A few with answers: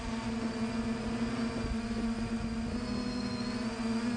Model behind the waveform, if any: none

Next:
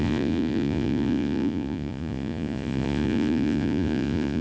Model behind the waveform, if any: vocoder, Vocos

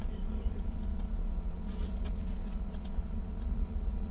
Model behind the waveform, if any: vocoder, Vocos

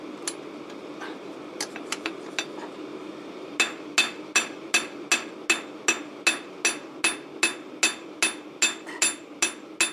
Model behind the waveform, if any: none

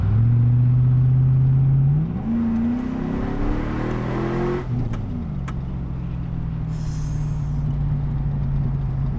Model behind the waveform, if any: none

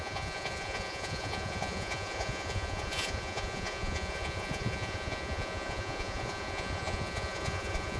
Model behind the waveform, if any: vocoder, Vocos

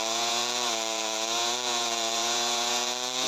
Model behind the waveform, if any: vocoder, Vocos